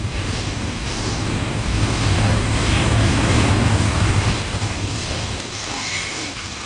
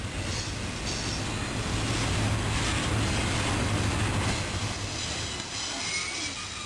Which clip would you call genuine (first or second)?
second